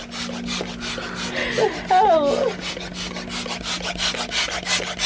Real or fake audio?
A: real